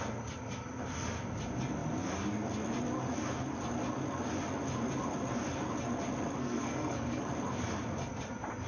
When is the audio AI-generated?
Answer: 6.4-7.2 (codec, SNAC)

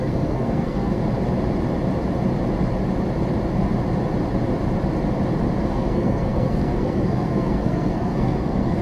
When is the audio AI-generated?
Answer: 0.0-1.0 (codec, SNAC); 5.6-8.8

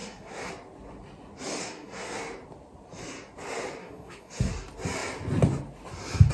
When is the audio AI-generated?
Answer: 0.0-0.5 (codec, SNAC); 1.6-2.2; 3.8-4.5

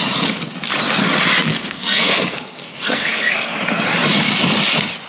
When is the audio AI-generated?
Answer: 1.5-3.6 (codec, SNAC)

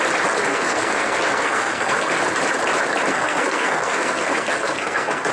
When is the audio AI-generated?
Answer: 0.5-2.1 (codec, SNAC); 3.1-5.3

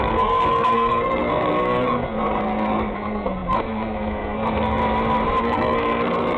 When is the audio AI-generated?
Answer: 0.0-4.8 (codec, SNAC); 5.4-6.4

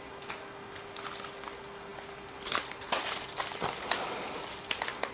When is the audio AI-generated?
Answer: none

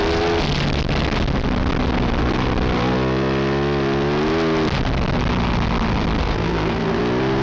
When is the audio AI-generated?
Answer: 6.2-7.0 (codec, SNAC)